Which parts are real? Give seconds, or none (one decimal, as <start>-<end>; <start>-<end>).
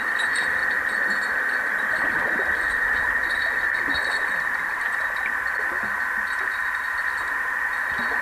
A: 0.0-0.6; 5.5-8.2